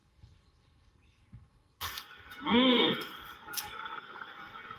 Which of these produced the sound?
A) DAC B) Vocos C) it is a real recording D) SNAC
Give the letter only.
D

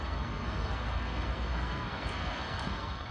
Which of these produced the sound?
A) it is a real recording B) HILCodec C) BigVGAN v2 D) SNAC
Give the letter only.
D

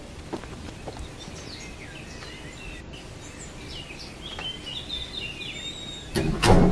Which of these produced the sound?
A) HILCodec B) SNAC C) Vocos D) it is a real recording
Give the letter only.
D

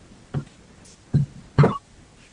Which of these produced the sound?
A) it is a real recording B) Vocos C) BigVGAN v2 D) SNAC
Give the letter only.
A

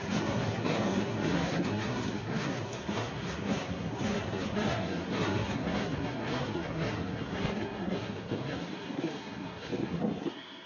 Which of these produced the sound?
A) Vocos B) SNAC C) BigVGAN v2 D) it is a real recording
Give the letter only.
B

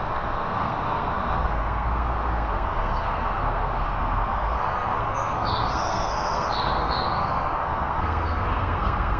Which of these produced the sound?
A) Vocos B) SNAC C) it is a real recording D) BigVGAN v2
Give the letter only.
B